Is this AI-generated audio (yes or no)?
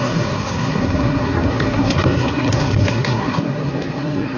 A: yes